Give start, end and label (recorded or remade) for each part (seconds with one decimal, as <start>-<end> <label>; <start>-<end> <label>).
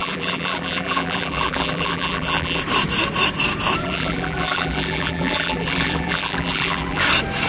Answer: 0.0-2.6 remade; 2.6-3.8 recorded; 3.8-7.0 remade; 7.0-7.5 recorded